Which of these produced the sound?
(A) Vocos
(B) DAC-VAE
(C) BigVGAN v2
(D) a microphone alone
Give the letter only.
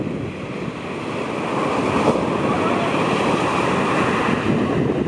D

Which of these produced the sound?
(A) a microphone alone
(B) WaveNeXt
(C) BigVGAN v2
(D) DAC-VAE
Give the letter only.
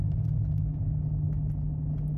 A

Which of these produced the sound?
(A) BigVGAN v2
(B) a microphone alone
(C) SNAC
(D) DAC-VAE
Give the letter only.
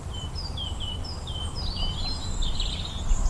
B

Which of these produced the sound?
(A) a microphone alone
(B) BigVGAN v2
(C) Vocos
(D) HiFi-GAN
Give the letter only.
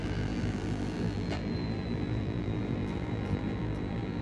B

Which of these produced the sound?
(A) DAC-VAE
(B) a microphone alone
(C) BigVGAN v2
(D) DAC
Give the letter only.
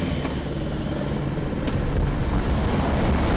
B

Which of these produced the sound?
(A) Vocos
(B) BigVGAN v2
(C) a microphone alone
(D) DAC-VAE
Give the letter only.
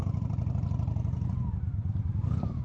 B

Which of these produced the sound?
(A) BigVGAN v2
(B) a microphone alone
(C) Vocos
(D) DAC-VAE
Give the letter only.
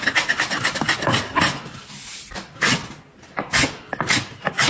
B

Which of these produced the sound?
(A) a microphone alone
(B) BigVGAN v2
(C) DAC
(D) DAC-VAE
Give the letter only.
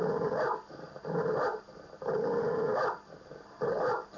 A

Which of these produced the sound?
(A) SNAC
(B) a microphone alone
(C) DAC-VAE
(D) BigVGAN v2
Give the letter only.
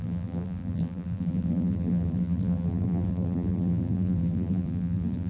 D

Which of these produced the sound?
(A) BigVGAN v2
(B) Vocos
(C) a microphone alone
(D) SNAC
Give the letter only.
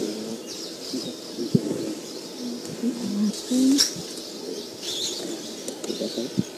C